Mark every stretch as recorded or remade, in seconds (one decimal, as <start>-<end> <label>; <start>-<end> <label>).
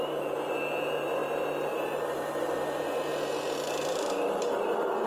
0.0-5.1 recorded